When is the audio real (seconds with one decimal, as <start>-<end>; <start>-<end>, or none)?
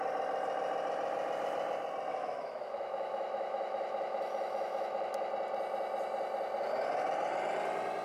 0.0-2.1; 5.3-8.0